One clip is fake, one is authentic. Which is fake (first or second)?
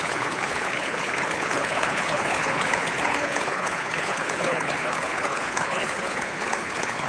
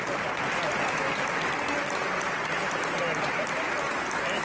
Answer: first